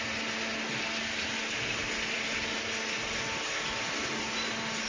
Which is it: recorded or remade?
recorded